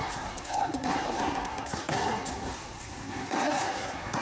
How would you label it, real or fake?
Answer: fake